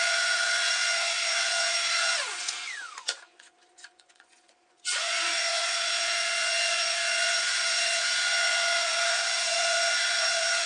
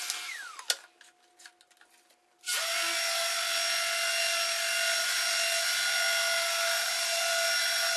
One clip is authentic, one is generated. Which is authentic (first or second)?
second